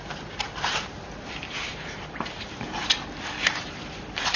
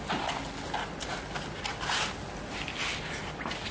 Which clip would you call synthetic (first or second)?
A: first